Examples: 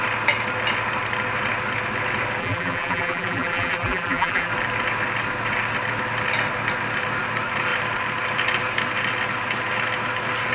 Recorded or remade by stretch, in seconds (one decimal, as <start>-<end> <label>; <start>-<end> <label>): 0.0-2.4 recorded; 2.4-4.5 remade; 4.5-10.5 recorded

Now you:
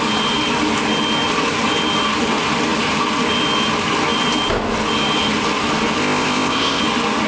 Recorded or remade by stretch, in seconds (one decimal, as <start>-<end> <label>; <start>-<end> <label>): 0.0-6.0 recorded; 6.0-6.8 remade; 6.8-7.3 recorded

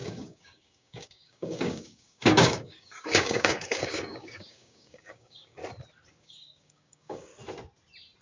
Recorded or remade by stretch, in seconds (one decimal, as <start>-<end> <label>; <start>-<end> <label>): 0.0-5.6 remade; 5.6-6.2 recorded; 6.2-7.3 remade; 7.3-8.2 recorded